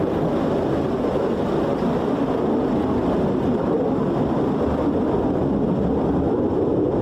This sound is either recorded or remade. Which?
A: recorded